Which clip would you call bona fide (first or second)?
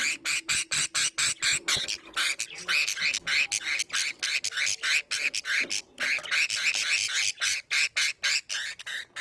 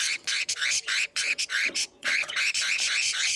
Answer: first